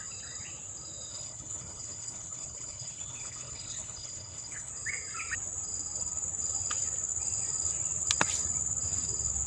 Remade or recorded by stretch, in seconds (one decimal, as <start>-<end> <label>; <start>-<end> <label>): 0.0-1.1 recorded; 1.1-4.7 remade; 4.7-9.5 recorded